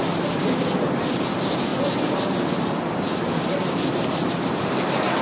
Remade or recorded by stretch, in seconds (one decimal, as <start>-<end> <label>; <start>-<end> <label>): 0.0-5.2 recorded